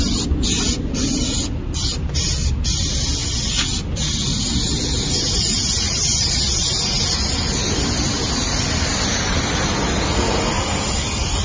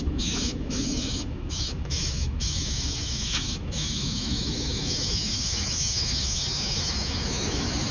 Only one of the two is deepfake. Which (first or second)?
second